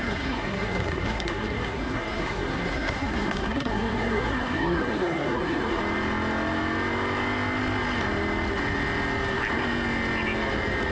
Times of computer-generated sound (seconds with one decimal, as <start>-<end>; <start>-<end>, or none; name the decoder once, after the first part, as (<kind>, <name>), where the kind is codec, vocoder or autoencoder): 0.0-5.8 (codec, SNAC)